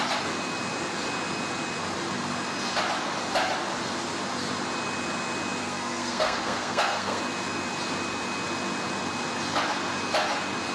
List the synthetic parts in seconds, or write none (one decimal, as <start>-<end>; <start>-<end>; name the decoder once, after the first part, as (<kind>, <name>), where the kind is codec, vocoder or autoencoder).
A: 5.6-7.2 (codec, SNAC)